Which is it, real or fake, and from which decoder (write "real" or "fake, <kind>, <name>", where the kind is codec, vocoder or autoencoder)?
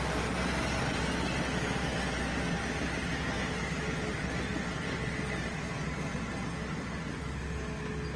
real